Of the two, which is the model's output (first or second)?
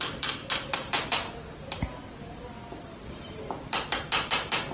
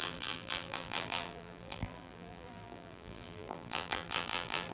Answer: second